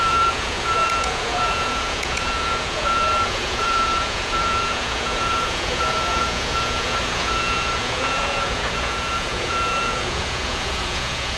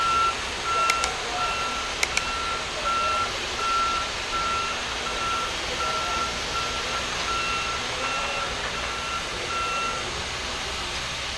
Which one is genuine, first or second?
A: second